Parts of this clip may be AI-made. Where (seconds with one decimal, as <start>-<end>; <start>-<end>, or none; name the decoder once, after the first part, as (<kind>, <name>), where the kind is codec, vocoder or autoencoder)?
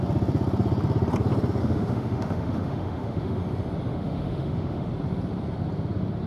1.6-3.4 (autoencoder, DAC-VAE); 3.9-4.9